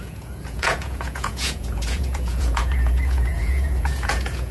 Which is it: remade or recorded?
remade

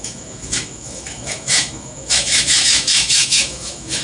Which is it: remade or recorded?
remade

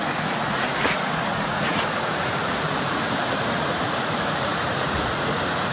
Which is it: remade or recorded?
remade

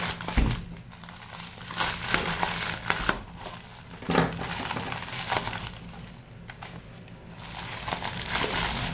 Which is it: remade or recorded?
recorded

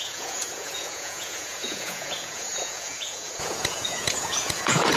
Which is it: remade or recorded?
remade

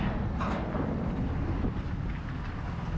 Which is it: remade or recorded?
recorded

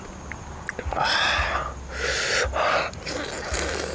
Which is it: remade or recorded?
recorded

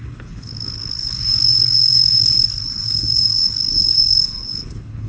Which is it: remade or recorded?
remade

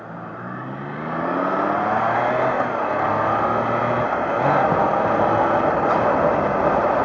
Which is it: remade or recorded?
recorded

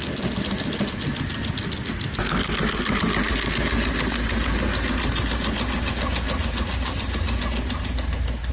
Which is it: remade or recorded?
recorded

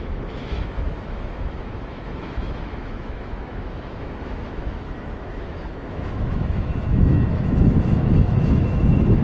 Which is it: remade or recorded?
remade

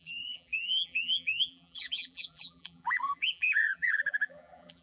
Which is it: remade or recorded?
remade